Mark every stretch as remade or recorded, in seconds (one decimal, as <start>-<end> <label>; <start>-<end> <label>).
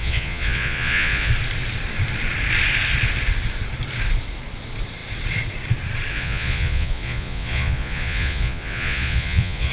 0.0-1.3 remade; 1.3-6.1 recorded; 6.1-9.7 remade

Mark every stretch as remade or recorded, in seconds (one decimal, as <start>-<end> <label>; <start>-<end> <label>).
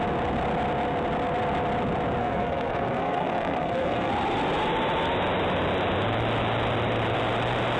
0.0-2.2 recorded; 2.2-4.1 remade; 4.1-7.8 recorded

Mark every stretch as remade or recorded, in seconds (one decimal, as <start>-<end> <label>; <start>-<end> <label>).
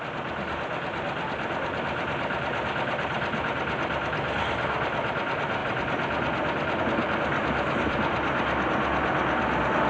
0.0-9.9 recorded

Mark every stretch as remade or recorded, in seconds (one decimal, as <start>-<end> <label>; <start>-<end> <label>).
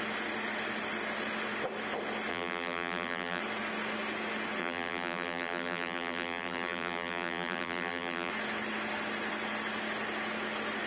0.0-2.3 recorded; 2.3-3.4 remade; 3.4-4.6 recorded; 4.6-8.3 remade; 8.3-10.9 recorded